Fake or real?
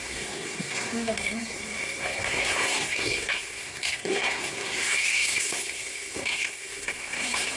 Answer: fake